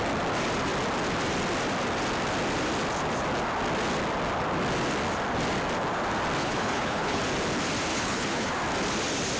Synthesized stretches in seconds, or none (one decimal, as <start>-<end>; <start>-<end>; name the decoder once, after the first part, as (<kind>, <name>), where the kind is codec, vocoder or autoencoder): 6.4-7.2 (codec, HILCodec); 7.9-8.5